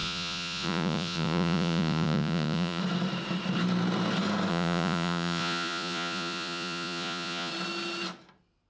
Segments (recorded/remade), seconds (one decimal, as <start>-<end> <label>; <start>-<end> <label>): 0.0-2.8 remade; 2.8-4.5 recorded; 4.5-7.5 remade; 7.5-8.7 recorded